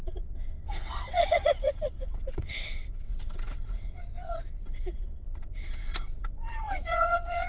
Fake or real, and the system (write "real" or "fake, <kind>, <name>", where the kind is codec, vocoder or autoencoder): fake, vocoder, WaveNeXt